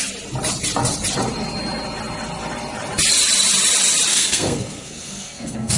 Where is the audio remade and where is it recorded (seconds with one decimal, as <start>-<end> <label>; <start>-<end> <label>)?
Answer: 0.0-4.1 recorded; 4.1-5.8 remade